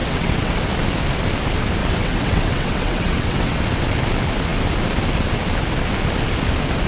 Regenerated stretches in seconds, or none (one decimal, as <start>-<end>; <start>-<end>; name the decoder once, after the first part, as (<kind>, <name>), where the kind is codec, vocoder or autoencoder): 0.0-0.5 (vocoder, WaveNeXt); 1.8-3.6